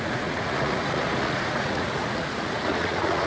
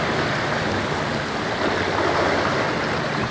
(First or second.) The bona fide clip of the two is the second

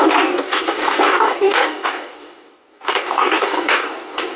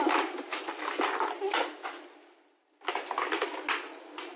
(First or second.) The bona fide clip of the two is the second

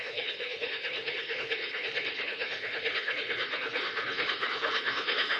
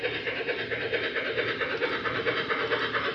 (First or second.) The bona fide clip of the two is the second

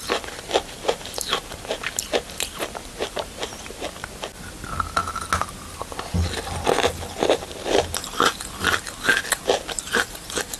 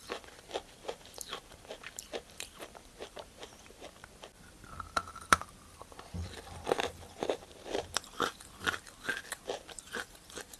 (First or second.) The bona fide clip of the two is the first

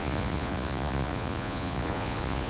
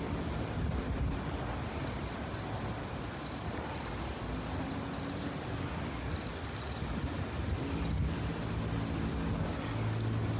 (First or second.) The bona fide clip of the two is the second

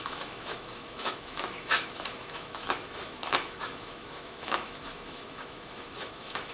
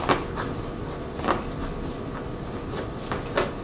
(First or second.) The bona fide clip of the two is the second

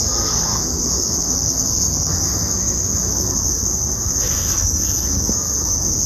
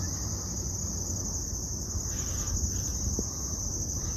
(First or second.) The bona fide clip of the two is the second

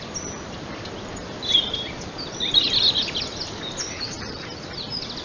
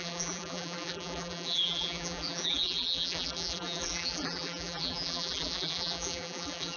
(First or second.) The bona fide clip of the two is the first